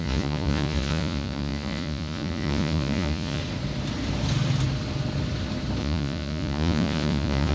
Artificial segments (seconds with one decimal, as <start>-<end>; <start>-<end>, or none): 0.0-3.4; 5.8-7.5